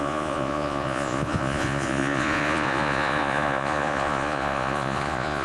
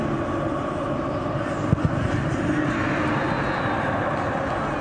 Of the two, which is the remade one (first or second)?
first